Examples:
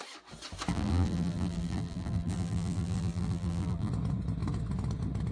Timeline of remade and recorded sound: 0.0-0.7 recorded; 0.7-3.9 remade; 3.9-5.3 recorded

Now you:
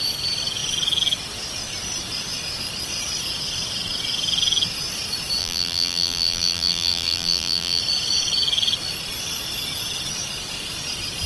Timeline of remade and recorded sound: 0.0-5.4 recorded; 5.4-7.8 remade; 7.8-11.3 recorded

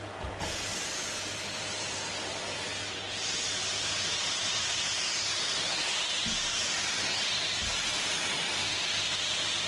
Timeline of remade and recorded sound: 0.0-0.7 recorded; 0.7-5.6 remade; 5.6-9.7 recorded

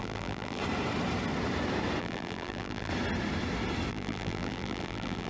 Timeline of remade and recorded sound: 0.0-0.6 remade; 0.6-2.0 recorded; 2.0-2.9 remade; 2.9-3.9 recorded; 3.9-5.3 remade

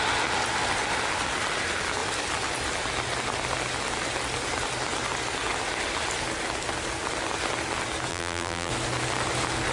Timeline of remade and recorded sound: 0.0-8.1 recorded; 8.1-8.7 remade; 8.7-9.7 recorded

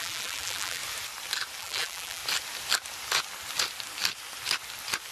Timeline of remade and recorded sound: 0.0-0.8 remade; 0.8-1.6 recorded; 1.6-2.2 remade; 2.2-5.1 recorded

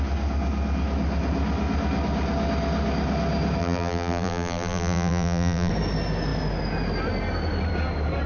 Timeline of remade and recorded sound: 0.0-3.6 recorded; 3.6-5.7 remade; 5.7-8.3 recorded